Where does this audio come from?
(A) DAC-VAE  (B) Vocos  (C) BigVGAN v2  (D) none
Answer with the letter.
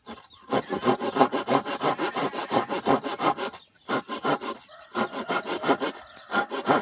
C